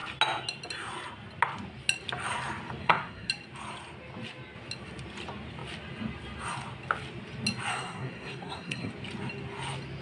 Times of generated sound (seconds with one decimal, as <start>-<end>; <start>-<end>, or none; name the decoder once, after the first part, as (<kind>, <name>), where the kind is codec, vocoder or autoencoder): 2.8-3.3 (codec, SNAC); 7.7-8.9